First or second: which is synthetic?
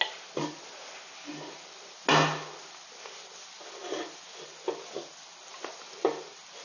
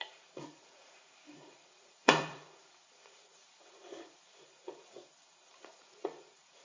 second